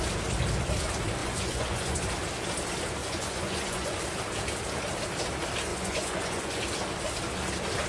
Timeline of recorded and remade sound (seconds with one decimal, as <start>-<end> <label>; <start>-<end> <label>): 0.0-1.2 recorded; 1.2-2.0 remade; 2.0-3.0 recorded; 3.0-4.0 remade; 4.0-5.7 recorded; 5.7-6.6 remade; 6.6-7.9 recorded